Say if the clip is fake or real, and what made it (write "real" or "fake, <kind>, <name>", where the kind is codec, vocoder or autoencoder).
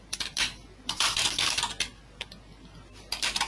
real